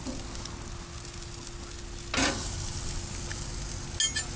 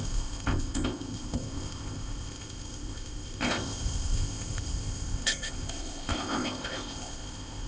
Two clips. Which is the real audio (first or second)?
first